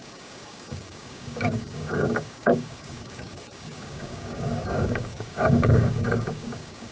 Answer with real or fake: fake